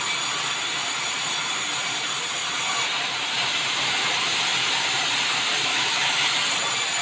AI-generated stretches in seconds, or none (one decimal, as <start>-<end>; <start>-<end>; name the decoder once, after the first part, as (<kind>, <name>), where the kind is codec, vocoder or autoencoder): 5.7-6.3 (autoencoder, DAC-VAE)